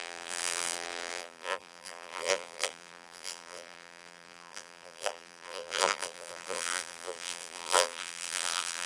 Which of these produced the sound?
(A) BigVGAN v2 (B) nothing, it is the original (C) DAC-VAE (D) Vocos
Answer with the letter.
A